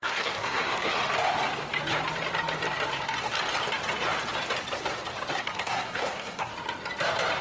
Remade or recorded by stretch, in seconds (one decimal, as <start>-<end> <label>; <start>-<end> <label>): 0.0-1.0 remade; 1.0-5.4 recorded; 5.4-6.5 remade; 6.5-7.4 recorded